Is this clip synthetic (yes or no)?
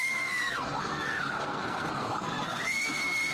yes